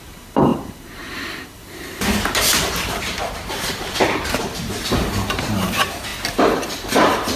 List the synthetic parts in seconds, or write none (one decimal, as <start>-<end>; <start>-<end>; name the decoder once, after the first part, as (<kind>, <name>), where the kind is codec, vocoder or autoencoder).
0.0-6.1 (vocoder, BigVGAN v2); 6.9-7.4